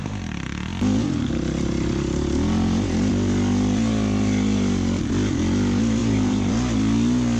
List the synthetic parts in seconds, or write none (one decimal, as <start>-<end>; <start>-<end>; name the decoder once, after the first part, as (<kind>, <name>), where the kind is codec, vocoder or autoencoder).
6.0-6.5 (vocoder, BigVGAN v2)